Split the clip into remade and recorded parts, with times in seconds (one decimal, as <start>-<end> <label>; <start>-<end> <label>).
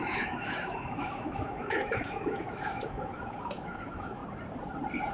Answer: 0.0-4.2 remade; 4.2-5.1 recorded